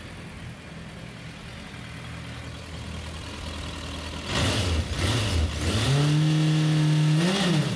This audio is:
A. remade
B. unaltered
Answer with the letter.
B